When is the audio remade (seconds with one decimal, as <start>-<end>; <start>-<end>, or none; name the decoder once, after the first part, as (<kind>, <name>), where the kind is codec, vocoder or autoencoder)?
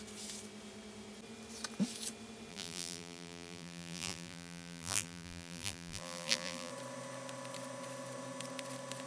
2.5-6.7 (vocoder, BigVGAN v2)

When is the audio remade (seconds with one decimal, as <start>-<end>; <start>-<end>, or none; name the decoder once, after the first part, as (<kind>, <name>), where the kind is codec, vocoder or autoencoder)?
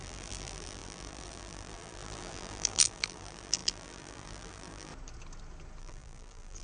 0.0-4.9 (vocoder, BigVGAN v2); 5.8-6.6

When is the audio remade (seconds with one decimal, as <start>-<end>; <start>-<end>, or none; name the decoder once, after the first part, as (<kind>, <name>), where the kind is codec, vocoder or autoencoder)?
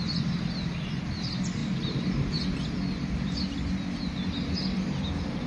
1.6-3.4 (vocoder, BigVGAN v2)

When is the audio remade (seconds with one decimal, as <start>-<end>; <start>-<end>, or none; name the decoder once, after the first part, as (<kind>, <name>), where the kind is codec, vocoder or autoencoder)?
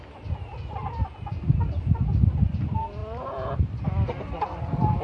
0.0-0.5 (vocoder, BigVGAN v2); 1.9-5.0